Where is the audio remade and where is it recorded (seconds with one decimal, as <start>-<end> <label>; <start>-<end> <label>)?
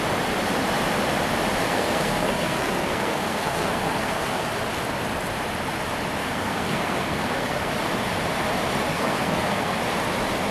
0.0-1.6 recorded; 1.6-4.5 remade; 4.5-6.2 recorded; 6.2-7.7 remade; 7.7-8.9 recorded; 8.9-9.8 remade; 9.8-10.5 recorded